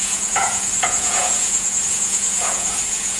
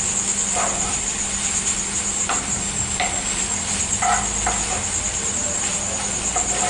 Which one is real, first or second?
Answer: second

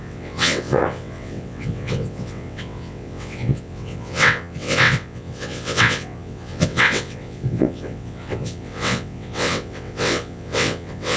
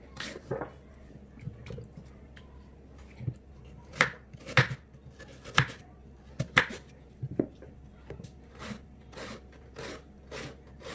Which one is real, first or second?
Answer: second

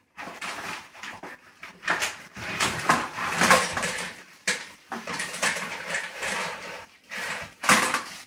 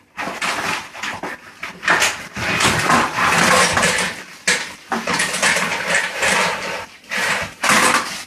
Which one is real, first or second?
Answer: second